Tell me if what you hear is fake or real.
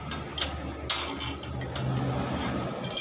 real